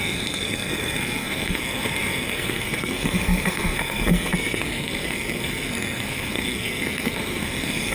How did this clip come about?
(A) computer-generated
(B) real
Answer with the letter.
A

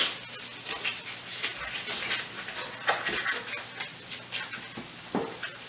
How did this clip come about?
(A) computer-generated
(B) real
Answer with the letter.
B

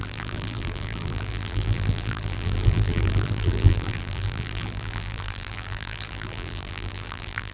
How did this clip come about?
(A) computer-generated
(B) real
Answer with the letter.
A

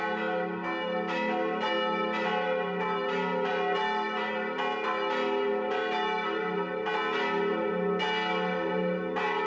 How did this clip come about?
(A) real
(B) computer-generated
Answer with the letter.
A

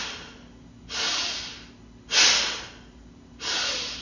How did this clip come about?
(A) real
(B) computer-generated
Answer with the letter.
A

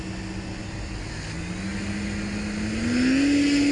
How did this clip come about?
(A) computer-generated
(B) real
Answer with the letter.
B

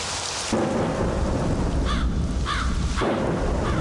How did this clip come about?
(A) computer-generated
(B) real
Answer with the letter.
B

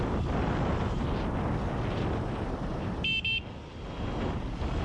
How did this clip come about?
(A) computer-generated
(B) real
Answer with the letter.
B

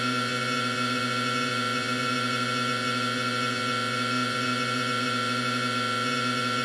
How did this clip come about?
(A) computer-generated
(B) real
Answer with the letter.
A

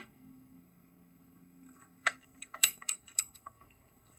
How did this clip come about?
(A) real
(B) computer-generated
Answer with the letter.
B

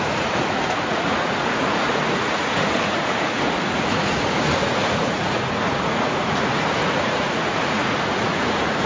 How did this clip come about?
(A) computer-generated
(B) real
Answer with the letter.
A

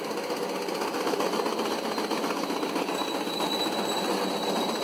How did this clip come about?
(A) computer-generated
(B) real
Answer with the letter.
B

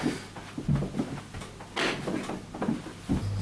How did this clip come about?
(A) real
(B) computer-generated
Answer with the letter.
A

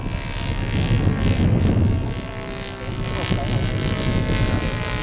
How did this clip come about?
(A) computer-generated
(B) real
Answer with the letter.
B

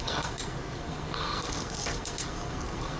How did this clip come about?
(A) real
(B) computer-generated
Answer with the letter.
B